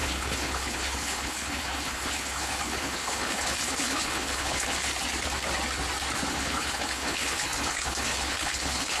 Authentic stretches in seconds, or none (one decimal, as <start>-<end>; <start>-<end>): 4.9-6.3